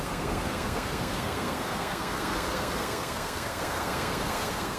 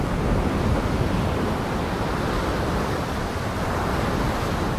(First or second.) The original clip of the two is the second